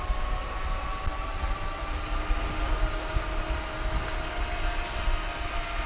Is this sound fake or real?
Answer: real